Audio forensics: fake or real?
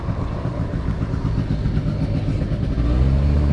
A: real